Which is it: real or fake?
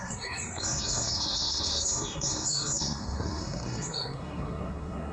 fake